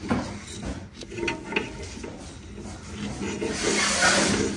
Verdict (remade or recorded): recorded